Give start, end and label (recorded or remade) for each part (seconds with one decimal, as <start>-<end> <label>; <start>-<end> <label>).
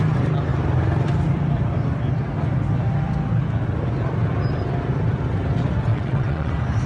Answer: 0.0-5.9 recorded; 5.9-6.5 remade; 6.5-6.9 recorded